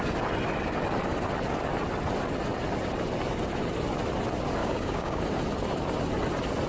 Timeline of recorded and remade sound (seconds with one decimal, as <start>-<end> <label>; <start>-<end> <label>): 0.0-4.6 recorded; 4.6-5.2 remade; 5.2-6.7 recorded